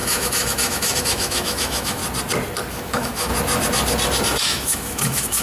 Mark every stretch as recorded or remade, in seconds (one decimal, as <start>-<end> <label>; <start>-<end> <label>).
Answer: 0.0-2.0 remade; 2.0-2.7 recorded; 2.7-3.3 remade; 3.3-4.4 recorded; 4.4-5.4 remade